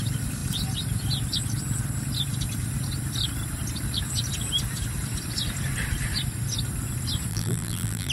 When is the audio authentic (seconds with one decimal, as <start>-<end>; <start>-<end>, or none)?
0.0-7.3